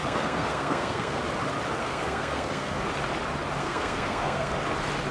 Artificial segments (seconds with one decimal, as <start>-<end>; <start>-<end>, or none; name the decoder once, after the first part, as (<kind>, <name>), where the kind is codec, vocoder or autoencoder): 0.0-1.2 (codec, SNAC); 1.8-2.8; 3.6-4.5

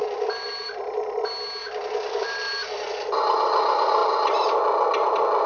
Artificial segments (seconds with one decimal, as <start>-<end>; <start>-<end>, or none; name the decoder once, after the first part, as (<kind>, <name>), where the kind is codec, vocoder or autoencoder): 0.0-1.2 (vocoder, BigVGAN v2); 1.6-2.9

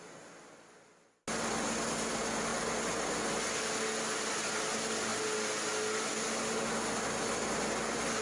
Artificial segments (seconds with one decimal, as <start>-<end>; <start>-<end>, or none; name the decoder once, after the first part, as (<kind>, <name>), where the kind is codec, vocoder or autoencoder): none

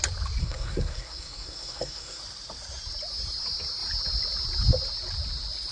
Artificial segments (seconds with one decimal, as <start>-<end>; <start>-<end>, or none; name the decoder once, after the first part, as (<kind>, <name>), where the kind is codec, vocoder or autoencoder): 0.4-2.2 (codec, SNAC)

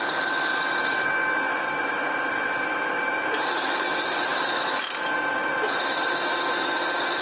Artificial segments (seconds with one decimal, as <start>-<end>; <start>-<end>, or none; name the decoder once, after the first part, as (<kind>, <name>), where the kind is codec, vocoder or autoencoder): 0.0-0.5 (autoencoder, DAC-VAE); 1.5-7.2